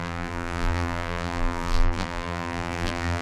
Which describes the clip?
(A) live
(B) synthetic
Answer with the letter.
B